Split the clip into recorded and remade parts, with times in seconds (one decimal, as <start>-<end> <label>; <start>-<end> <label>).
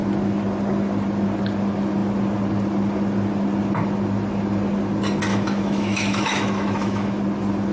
0.0-5.3 recorded; 5.3-7.2 remade; 7.2-7.7 recorded